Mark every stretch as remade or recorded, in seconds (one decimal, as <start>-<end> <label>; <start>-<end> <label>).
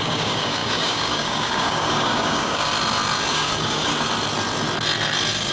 0.0-2.7 remade; 2.7-3.3 recorded; 3.3-3.9 remade; 3.9-5.5 recorded